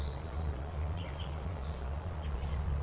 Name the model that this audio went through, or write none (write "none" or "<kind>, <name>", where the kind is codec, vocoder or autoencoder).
vocoder, Vocos